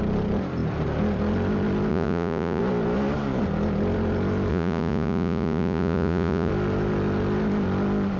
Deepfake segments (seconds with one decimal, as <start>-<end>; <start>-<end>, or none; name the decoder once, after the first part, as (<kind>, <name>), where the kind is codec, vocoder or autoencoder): 1.9-2.6 (vocoder, Vocos); 4.5-6.5